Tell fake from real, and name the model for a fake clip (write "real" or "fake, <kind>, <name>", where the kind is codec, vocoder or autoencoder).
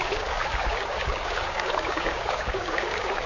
fake, codec, DAC